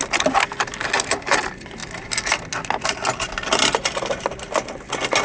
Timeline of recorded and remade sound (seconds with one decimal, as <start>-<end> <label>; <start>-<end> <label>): 0.0-5.2 recorded